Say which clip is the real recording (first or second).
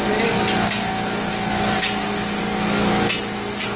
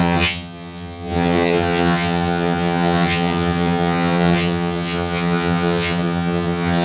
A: first